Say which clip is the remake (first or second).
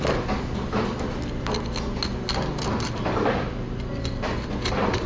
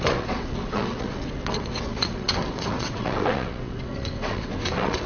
second